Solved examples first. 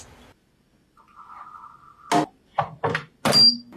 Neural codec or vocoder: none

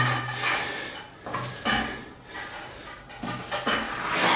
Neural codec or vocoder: none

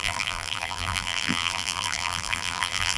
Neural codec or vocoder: vocoder, BigVGAN v2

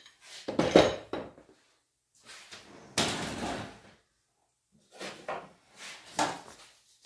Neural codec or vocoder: none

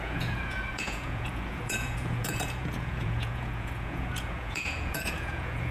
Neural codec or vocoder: vocoder, Vocos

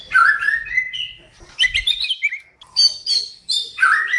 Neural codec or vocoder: vocoder, BigVGAN v2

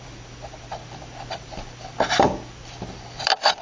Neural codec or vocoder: none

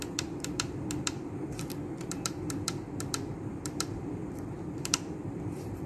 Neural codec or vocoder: vocoder, BigVGAN v2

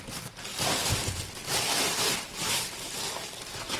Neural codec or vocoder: none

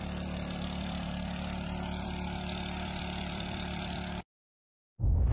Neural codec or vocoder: vocoder, BigVGAN v2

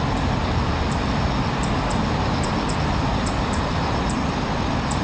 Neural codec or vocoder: none